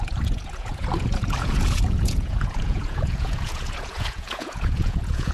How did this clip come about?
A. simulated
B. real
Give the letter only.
A